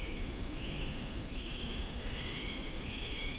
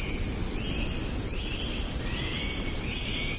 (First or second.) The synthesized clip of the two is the first